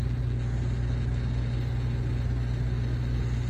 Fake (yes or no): no